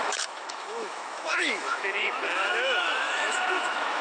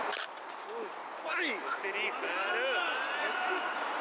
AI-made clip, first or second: first